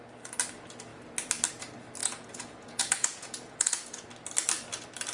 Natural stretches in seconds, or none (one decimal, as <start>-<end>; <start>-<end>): 0.0-2.0; 4.1-5.1